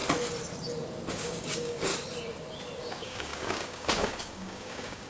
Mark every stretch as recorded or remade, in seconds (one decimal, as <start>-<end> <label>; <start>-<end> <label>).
0.0-1.1 recorded; 1.1-1.9 remade; 1.9-2.8 recorded; 2.8-5.1 remade